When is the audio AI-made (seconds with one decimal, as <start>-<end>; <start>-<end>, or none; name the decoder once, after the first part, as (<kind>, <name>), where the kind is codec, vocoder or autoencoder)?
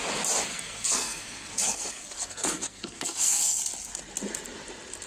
0.5-3.6 (codec, SNAC)